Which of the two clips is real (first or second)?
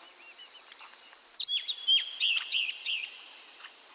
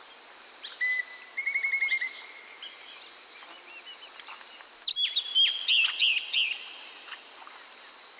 second